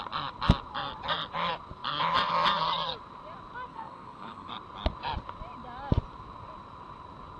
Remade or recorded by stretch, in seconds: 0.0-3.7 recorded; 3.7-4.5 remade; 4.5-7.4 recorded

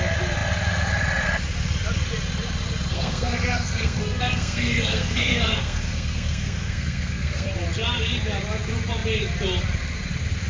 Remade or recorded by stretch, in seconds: 0.0-2.9 recorded; 2.9-7.5 remade; 7.5-10.5 recorded

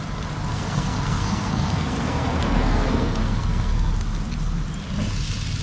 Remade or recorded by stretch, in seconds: 0.0-0.5 recorded; 0.5-3.9 remade; 3.9-5.6 recorded

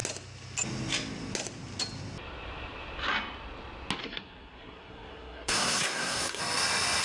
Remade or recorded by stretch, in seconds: 0.0-4.0 recorded; 4.0-6.4 remade; 6.4-7.0 recorded

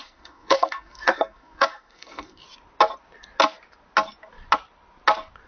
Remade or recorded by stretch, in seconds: 0.0-2.4 remade; 2.4-5.5 recorded

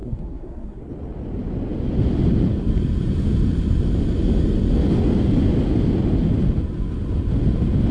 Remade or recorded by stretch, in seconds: 0.0-0.8 remade; 0.8-7.9 recorded

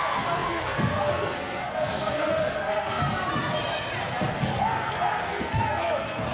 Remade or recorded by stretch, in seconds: 0.0-3.0 remade; 3.0-4.4 recorded; 4.4-6.3 remade